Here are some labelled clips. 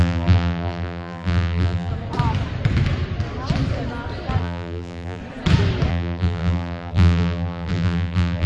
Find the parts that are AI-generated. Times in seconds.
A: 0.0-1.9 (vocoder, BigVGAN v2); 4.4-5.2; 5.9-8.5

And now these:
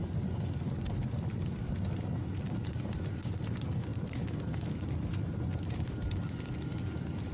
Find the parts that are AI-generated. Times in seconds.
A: none

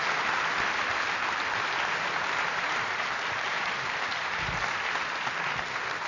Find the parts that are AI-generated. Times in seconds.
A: 0.9-4.6 (vocoder, BigVGAN v2)

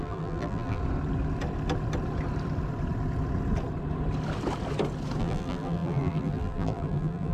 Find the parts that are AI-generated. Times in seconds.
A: 0.0-0.8 (vocoder, BigVGAN v2); 5.2-7.3

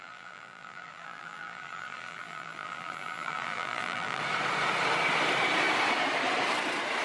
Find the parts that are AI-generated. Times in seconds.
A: 0.0-4.2 (vocoder, BigVGAN v2)

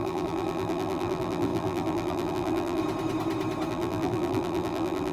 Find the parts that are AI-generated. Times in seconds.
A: 0.0-2.8 (vocoder, BigVGAN v2); 3.7-5.1

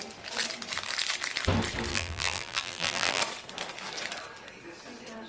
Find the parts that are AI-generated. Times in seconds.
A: 1.9-3.2 (vocoder, BigVGAN v2)

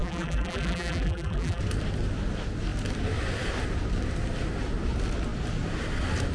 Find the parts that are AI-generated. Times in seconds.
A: 0.0-1.6 (vocoder, BigVGAN v2)